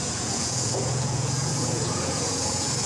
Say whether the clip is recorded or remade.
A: remade